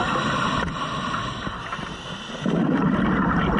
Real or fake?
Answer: real